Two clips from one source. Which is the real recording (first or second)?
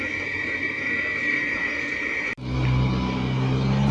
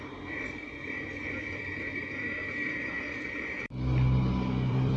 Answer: first